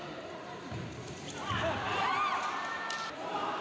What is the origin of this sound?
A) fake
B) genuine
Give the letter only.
B